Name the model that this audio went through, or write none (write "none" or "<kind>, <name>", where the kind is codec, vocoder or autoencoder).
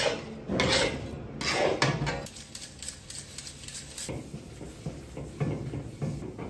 none